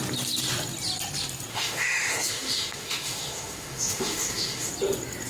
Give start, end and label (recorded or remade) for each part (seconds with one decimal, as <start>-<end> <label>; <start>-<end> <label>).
0.0-1.5 recorded; 1.5-4.7 remade; 4.7-5.3 recorded

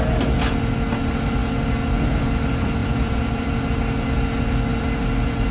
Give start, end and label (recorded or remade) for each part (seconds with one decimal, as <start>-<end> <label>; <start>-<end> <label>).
0.0-2.8 recorded; 2.8-3.5 remade; 3.5-4.7 recorded; 4.7-5.5 remade

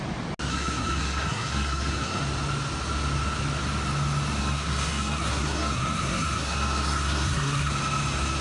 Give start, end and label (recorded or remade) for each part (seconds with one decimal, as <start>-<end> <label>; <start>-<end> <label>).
0.0-0.5 recorded; 0.5-2.2 remade; 2.2-4.4 recorded; 4.4-7.7 remade; 7.7-8.4 recorded

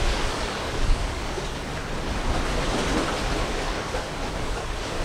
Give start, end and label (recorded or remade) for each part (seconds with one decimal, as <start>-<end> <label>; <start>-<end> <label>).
0.0-1.7 remade; 1.7-3.5 recorded; 3.5-5.0 remade

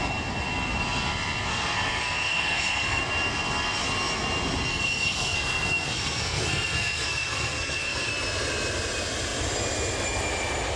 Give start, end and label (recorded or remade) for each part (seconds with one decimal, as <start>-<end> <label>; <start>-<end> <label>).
0.0-1.5 recorded; 1.5-3.0 remade; 3.0-4.7 recorded; 4.7-8.1 remade; 8.1-10.8 recorded

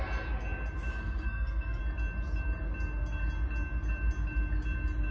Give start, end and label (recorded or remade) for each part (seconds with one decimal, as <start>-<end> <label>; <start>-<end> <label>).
0.0-0.9 recorded; 0.9-1.8 remade; 1.8-5.1 recorded

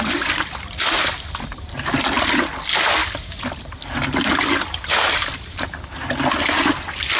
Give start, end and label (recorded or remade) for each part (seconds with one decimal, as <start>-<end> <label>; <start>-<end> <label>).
0.0-7.2 recorded

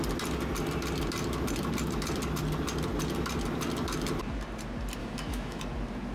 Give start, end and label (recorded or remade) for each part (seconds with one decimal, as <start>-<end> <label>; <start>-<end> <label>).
0.0-5.0 recorded; 5.0-5.6 remade; 5.6-6.1 recorded